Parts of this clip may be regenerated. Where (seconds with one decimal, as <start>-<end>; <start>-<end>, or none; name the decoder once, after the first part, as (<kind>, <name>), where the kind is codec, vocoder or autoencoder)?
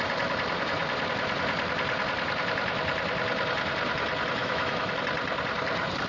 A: 4.4-4.9 (autoencoder, DAC-VAE)